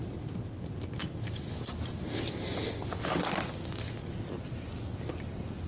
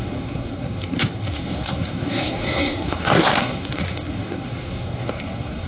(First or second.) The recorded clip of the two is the first